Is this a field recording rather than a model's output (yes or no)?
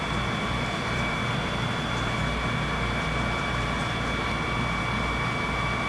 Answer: yes